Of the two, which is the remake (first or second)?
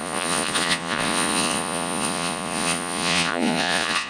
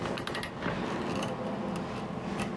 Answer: first